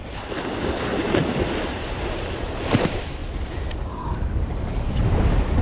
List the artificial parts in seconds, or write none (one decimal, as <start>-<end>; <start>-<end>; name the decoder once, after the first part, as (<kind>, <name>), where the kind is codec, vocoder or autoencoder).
0.9-2.8 (vocoder, BigVGAN v2); 3.2-4.2